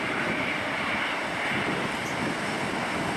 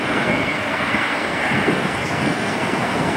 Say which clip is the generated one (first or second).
second